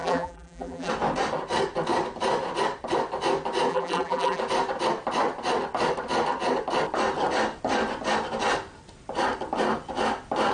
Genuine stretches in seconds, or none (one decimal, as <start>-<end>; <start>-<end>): 0.9-3.7; 4.4-10.5